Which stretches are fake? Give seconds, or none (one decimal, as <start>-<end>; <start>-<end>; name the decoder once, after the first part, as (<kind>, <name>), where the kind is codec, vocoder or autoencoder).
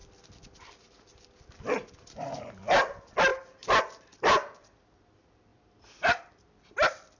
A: 0.0-2.5 (vocoder, BigVGAN v2); 3.3-3.8; 5.5-6.7